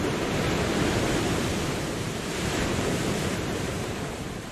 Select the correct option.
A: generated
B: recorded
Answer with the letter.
A